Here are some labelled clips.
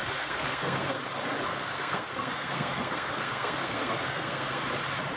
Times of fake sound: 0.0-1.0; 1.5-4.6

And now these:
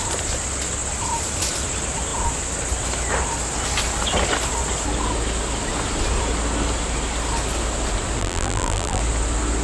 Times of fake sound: 8.2-9.0

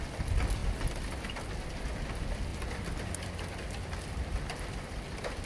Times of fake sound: 0.6-1.6; 2.5-5.0

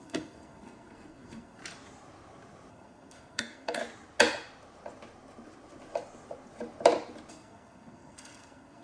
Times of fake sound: 0.0-1.6; 2.7-3.8; 7.3-8.8

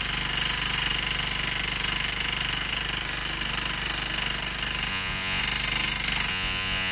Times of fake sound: 4.9-5.4; 6.3-6.9

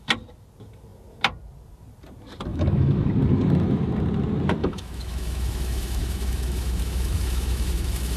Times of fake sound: 2.5-3.1; 4.6-8.2